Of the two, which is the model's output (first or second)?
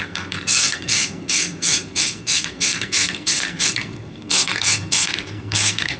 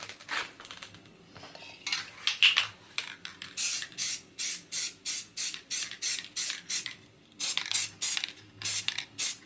first